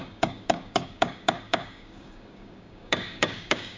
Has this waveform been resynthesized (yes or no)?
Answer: yes